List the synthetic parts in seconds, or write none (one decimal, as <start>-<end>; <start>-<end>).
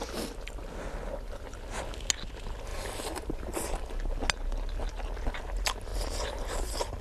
2.7-3.6; 5.9-7.0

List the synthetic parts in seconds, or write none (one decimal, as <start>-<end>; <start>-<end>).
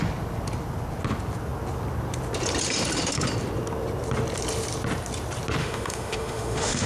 5.6-6.9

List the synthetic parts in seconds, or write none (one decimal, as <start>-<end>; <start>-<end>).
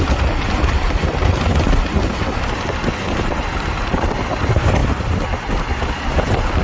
none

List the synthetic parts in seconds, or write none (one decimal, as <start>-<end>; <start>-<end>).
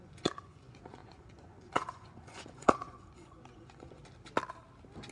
0.0-4.0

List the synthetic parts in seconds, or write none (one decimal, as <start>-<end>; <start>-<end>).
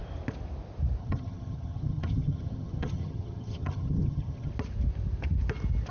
1.0-4.5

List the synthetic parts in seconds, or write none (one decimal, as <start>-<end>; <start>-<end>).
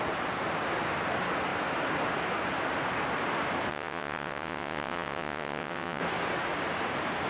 3.7-6.0